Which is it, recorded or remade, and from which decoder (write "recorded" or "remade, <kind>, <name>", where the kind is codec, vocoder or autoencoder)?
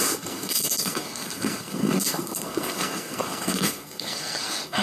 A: remade, codec, SNAC